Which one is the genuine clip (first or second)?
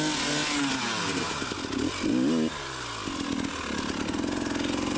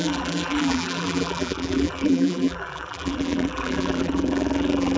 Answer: first